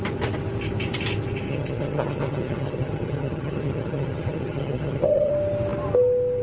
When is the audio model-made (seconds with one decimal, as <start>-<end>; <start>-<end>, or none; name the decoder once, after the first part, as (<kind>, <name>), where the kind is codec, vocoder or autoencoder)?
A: 1.5-5.3 (vocoder, HiFi-GAN)